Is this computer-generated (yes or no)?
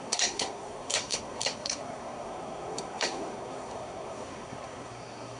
yes